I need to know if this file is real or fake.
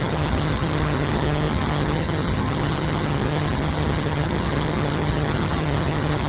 fake